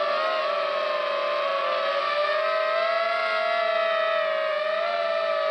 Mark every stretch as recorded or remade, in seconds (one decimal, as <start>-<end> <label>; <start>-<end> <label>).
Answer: 0.0-5.5 recorded

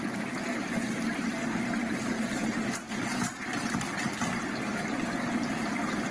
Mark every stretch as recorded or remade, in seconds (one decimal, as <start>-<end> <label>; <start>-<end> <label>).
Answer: 0.0-1.8 recorded; 1.8-5.1 remade; 5.1-6.1 recorded

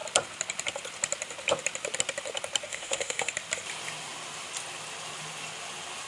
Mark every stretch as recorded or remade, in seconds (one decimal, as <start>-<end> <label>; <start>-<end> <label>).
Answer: 0.0-2.7 recorded; 2.7-3.3 remade; 3.3-6.1 recorded

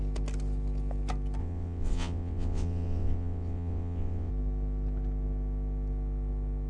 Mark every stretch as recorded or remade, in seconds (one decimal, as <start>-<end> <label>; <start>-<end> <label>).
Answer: 0.0-1.4 recorded; 1.4-4.3 remade; 4.3-6.7 recorded

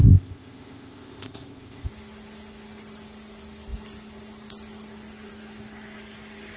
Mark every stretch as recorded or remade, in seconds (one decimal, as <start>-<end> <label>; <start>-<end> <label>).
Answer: 0.0-1.9 remade; 1.9-6.6 recorded

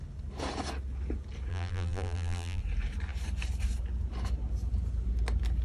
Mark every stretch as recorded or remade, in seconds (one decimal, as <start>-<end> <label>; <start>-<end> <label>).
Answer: 0.0-1.5 recorded; 1.5-2.6 remade; 2.6-5.6 recorded

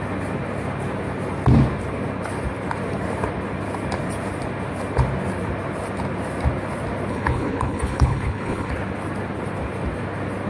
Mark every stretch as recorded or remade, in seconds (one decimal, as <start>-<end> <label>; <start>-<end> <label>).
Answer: 0.0-7.1 recorded; 7.1-8.7 remade; 8.7-10.5 recorded

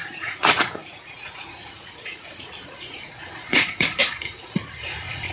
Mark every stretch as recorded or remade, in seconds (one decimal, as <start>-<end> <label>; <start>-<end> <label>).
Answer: 0.0-5.3 remade